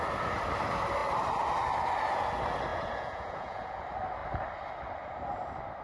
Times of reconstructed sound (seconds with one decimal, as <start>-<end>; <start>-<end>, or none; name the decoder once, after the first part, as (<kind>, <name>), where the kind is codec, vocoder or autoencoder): 2.7-3.8 (vocoder, Vocos)